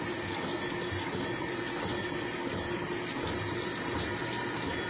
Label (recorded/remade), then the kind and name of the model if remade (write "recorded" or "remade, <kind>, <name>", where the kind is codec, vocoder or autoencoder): recorded